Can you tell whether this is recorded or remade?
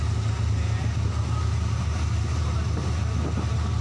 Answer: recorded